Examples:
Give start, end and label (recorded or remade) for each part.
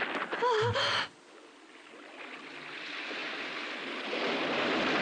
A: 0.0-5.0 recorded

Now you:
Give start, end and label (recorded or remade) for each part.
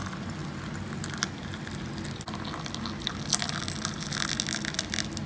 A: 0.0-5.3 recorded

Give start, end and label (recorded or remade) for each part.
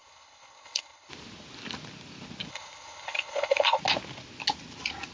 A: 0.0-1.1 remade; 1.1-2.5 recorded; 2.5-3.8 remade; 3.8-5.1 recorded